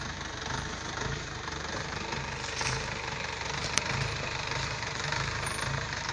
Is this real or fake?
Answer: fake